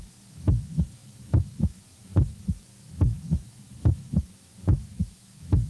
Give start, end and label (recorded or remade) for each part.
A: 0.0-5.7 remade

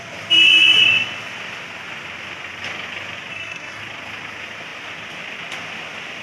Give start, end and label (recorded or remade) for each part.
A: 0.0-3.3 recorded; 3.3-3.8 remade; 3.8-6.2 recorded

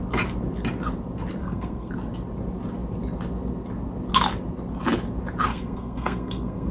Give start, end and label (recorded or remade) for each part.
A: 0.0-1.4 recorded; 1.4-1.9 remade; 1.9-5.5 recorded; 5.5-6.7 remade

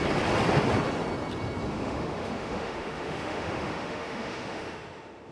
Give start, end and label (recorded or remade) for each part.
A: 0.0-1.7 recorded; 1.7-5.3 remade

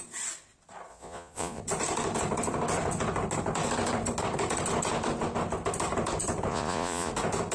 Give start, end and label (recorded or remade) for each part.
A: 0.0-0.9 recorded; 0.9-1.6 remade; 1.6-6.5 recorded; 6.5-7.1 remade; 7.1-7.5 recorded